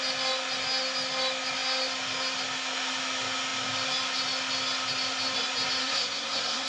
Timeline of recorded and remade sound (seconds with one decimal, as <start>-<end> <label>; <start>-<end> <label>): 0.0-5.8 recorded; 5.8-6.7 remade